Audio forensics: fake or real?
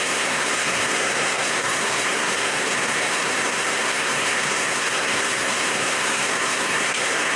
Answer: fake